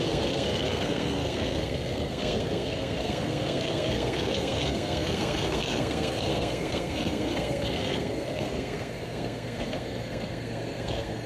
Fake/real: fake